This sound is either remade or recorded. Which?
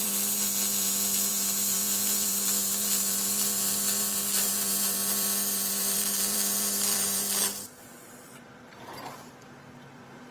remade